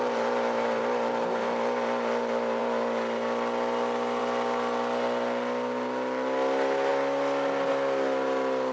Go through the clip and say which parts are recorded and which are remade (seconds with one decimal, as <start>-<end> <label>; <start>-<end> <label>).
0.0-8.7 recorded